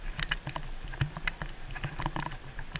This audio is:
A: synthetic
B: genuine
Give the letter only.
B